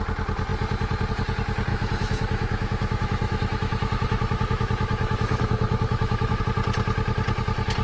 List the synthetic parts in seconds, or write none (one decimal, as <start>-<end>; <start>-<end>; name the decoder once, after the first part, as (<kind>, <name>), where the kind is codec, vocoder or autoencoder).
1.7-6.4 (autoencoder, DAC-VAE)